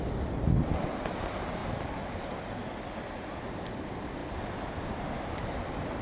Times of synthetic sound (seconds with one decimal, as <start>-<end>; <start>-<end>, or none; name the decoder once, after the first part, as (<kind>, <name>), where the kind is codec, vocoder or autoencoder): none